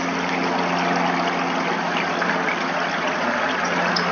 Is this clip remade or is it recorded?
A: recorded